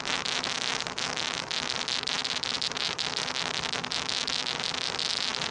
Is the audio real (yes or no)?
yes